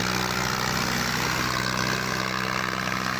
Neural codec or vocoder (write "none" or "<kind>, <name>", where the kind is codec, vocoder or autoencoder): none